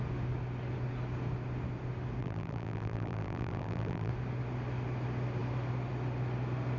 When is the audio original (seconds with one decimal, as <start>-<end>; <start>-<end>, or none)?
0.0-2.2; 4.1-6.8